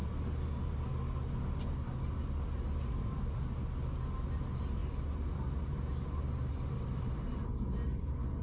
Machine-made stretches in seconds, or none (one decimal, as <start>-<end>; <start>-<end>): 4.8-5.9